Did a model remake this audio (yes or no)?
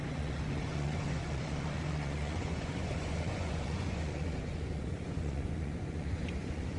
yes